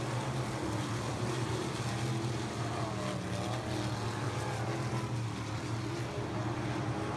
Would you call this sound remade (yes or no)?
no